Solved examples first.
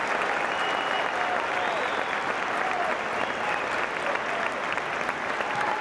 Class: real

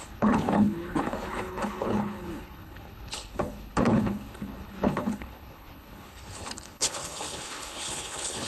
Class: fake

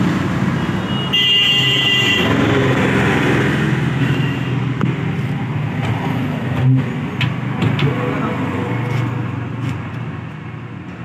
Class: real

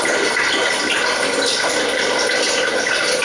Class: real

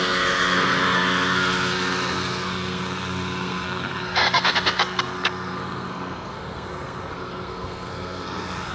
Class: fake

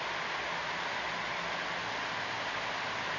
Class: real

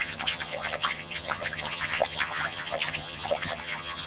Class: fake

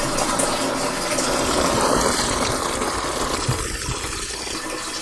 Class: real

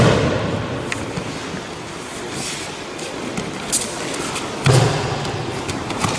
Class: real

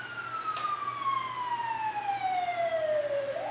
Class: real